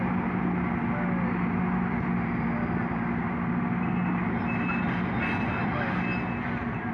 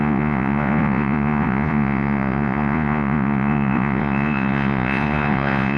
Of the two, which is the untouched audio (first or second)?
first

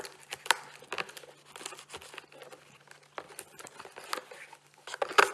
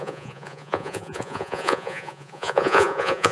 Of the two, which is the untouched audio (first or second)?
first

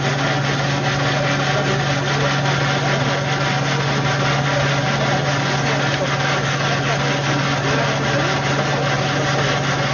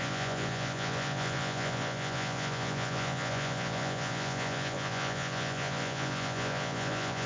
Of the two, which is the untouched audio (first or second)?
first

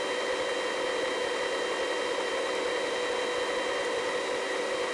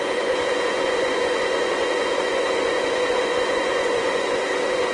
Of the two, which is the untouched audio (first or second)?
first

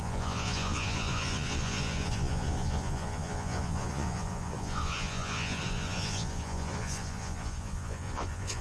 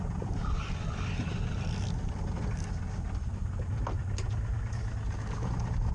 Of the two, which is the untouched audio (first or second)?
second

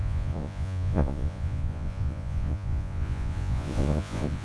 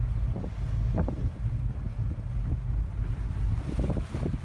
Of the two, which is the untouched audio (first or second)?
second